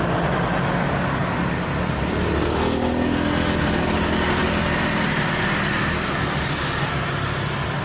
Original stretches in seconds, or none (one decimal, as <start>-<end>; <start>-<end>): 0.0-7.8